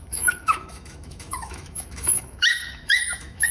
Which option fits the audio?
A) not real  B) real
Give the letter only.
A